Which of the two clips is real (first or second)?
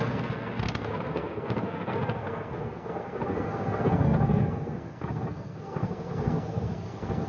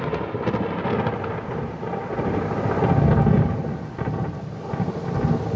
second